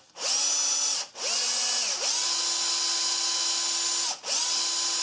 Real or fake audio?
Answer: real